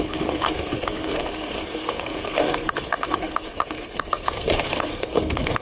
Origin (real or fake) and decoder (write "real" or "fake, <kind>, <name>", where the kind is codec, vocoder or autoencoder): fake, codec, SNAC